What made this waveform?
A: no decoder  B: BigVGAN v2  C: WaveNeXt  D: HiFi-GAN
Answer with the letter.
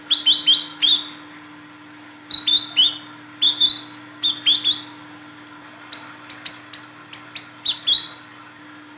A